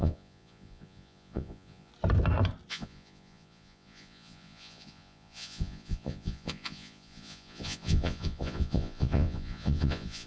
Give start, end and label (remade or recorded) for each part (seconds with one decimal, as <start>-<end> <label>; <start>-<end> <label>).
0.0-1.9 remade; 1.9-2.7 recorded; 2.7-10.3 remade